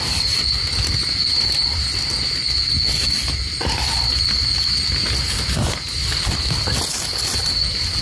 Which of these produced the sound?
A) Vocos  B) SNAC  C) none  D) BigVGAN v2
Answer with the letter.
C